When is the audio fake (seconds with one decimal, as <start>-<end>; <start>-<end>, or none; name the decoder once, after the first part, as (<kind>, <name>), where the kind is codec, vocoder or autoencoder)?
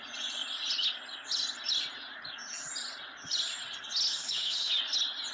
4.1-4.7 (codec, DAC)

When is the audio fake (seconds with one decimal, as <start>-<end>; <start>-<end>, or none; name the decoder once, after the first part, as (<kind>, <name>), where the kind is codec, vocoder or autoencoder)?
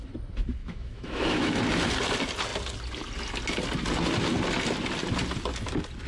0.6-1.6 (autoencoder, DAC-VAE)